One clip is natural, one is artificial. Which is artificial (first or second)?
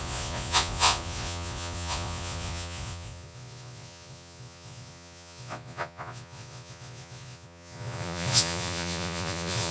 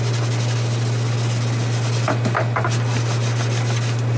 first